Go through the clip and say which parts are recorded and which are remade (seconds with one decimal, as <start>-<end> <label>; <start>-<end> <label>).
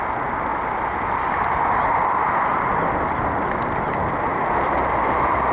0.0-5.5 recorded